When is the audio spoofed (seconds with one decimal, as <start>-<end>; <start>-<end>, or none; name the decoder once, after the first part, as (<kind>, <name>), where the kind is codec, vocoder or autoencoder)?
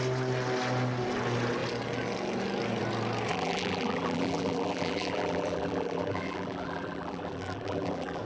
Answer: 3.3-8.2 (vocoder, BigVGAN v2)